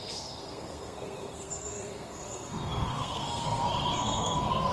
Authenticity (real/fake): fake